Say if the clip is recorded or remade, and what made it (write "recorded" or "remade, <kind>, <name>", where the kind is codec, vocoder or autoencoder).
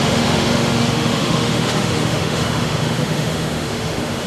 remade, autoencoder, DAC-VAE